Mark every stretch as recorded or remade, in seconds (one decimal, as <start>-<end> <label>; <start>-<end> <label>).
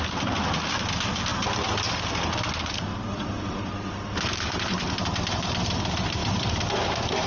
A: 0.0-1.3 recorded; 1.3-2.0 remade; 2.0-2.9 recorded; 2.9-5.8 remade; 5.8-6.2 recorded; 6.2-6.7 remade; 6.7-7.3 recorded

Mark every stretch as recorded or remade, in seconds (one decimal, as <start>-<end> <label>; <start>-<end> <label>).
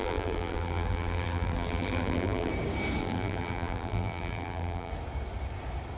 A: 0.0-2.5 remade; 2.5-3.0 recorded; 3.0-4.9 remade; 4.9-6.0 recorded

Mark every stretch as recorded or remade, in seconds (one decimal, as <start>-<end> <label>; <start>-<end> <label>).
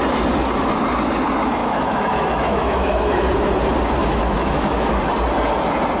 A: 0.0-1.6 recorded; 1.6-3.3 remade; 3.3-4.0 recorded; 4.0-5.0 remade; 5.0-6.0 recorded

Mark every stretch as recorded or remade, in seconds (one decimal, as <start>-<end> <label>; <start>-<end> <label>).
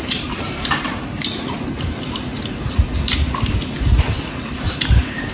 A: 0.0-2.3 remade; 2.3-4.5 recorded; 4.5-5.3 remade